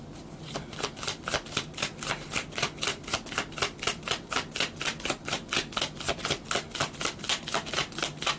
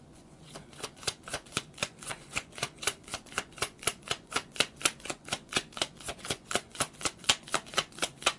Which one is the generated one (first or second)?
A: second